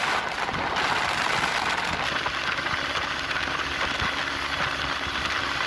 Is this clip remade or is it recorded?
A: recorded